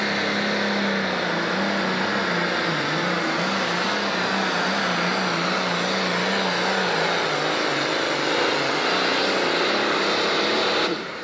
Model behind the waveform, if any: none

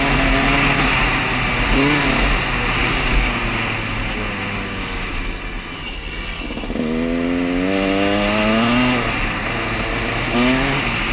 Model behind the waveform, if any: none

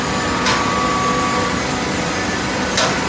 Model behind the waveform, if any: none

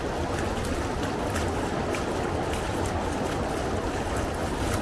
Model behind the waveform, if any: none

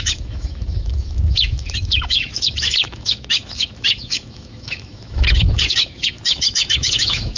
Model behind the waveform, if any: autoencoder, DAC-VAE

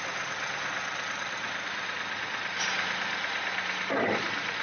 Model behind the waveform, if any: none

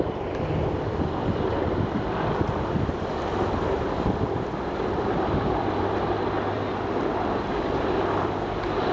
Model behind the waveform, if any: vocoder, BigVGAN v2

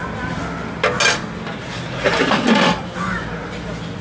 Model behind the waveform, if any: none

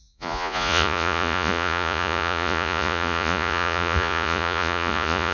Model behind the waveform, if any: vocoder, Vocos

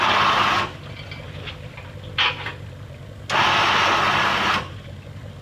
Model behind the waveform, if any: none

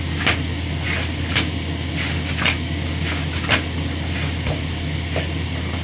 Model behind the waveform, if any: none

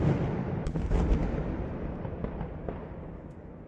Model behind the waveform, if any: none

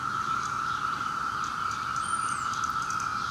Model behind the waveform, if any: none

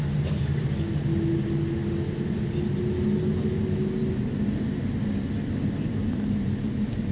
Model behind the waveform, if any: none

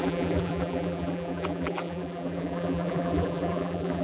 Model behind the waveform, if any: vocoder, BigVGAN v2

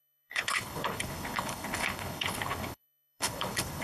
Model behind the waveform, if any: codec, HILCodec